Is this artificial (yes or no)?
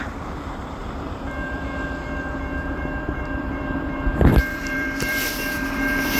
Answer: yes